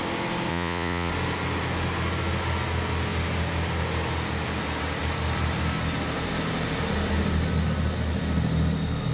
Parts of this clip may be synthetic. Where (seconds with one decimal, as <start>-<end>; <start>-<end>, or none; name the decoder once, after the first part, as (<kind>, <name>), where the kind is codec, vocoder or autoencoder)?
0.5-1.1 (vocoder, Vocos)